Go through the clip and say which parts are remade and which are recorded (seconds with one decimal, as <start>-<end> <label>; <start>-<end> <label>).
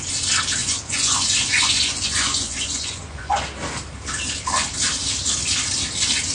0.0-0.6 recorded; 0.6-3.4 remade; 3.4-6.3 recorded